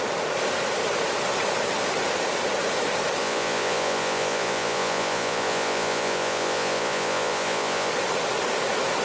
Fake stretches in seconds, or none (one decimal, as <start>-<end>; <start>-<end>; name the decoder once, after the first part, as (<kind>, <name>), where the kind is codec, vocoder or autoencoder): 3.2-7.9 (vocoder, Vocos)